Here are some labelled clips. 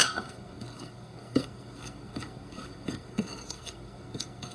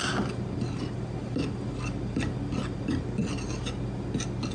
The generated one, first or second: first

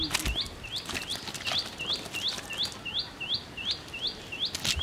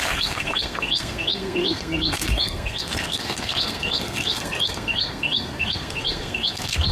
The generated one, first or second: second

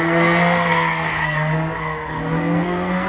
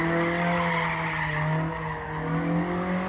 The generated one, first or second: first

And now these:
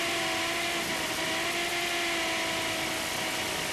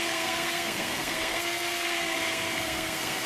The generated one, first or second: second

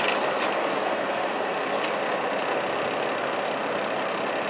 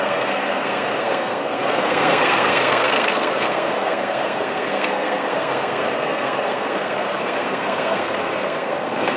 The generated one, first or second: second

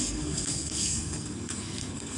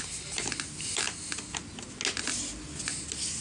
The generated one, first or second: first